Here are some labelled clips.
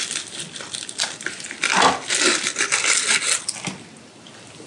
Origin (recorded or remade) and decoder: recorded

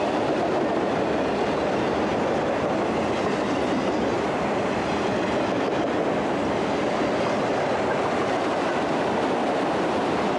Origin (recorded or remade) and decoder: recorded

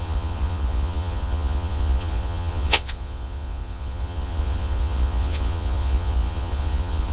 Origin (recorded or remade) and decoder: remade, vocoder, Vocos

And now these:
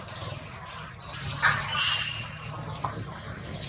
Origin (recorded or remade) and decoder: recorded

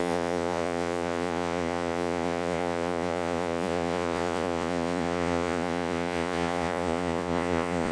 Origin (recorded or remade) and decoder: remade, vocoder, Vocos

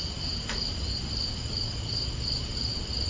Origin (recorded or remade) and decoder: remade, vocoder, BigVGAN v2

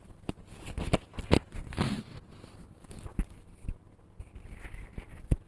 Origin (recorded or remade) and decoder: recorded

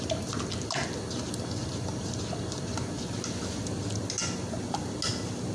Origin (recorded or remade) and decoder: recorded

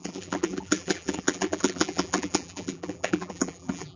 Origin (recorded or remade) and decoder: remade, vocoder, BigVGAN v2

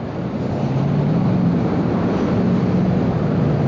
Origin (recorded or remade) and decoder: recorded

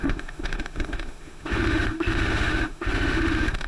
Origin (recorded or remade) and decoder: remade, autoencoder, DAC-VAE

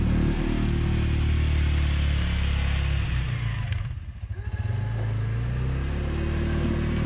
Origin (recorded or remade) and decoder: recorded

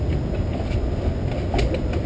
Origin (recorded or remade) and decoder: recorded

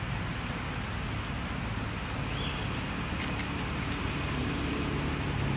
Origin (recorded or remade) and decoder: recorded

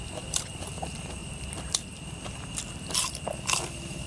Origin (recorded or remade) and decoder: remade, vocoder, BigVGAN v2